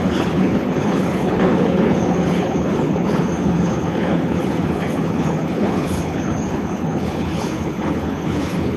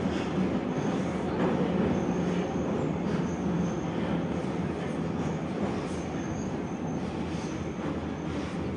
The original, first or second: second